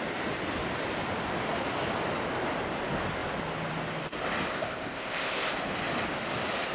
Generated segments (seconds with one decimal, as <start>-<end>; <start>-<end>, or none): 4.5-5.5